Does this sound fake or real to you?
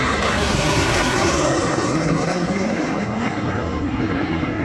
fake